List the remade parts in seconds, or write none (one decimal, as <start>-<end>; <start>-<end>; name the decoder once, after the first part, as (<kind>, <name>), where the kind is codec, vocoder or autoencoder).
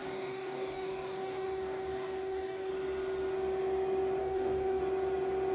0.0-2.7 (codec, DAC); 4.2-4.8